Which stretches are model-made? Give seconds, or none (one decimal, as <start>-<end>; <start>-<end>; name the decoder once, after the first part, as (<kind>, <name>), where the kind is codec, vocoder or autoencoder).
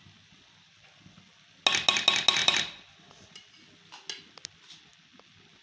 2.4-3.5 (vocoder, BigVGAN v2)